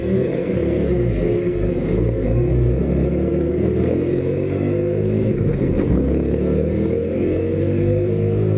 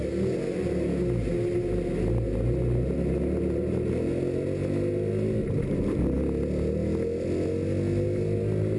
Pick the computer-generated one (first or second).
first